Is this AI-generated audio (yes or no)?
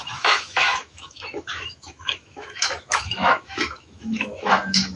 yes